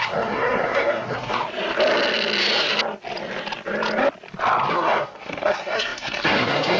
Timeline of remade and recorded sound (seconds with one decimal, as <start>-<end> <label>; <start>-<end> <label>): 0.0-1.4 remade; 1.4-4.7 recorded; 4.7-6.8 remade